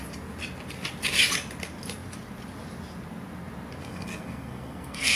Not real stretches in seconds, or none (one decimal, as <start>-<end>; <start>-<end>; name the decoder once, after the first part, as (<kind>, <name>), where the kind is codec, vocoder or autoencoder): 3.8-5.2 (codec, SNAC)